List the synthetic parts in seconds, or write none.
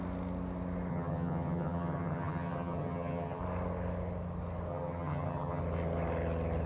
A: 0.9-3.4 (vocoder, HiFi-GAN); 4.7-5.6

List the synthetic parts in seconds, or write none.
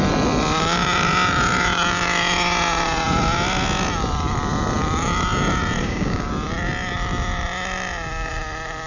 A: 5.8-6.3 (codec, DAC)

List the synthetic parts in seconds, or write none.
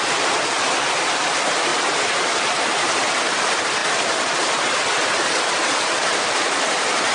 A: none